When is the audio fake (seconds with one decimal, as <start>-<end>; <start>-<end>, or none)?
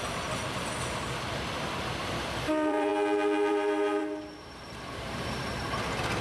0.0-2.9; 3.5-6.2